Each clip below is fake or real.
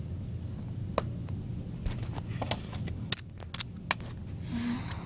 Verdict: real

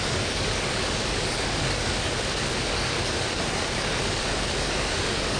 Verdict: fake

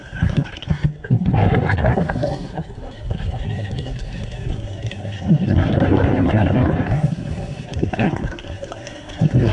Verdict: fake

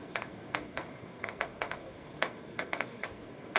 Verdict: fake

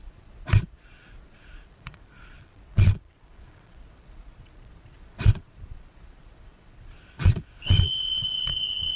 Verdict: fake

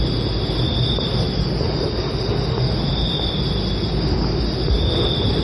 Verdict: real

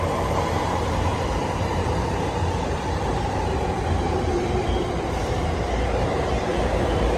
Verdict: fake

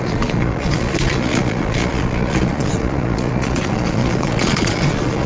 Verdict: fake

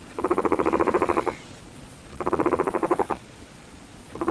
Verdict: fake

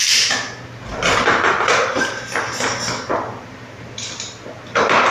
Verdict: fake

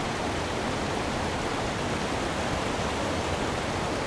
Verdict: real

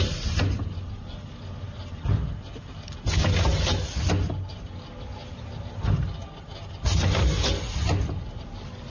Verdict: real